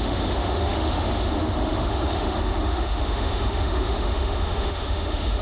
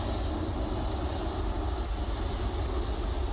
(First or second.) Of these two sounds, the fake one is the first